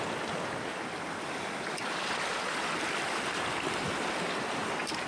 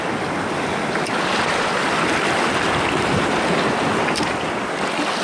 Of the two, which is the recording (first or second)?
second